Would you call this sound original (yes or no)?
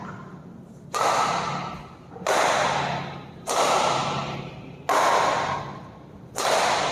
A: yes